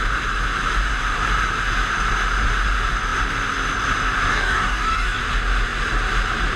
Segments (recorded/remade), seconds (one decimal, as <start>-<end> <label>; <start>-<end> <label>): 0.0-4.3 recorded; 4.3-5.2 remade; 5.2-6.6 recorded